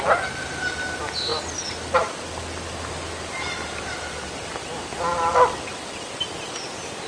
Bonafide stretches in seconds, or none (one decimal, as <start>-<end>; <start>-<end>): 0.0-7.1